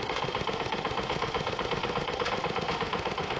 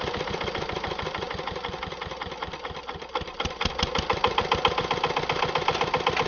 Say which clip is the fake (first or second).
first